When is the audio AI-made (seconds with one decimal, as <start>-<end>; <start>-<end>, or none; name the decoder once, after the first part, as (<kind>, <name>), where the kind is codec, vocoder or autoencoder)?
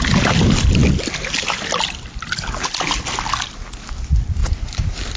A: none